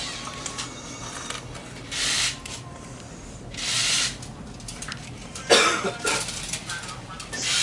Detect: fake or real fake